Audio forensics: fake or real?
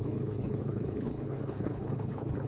fake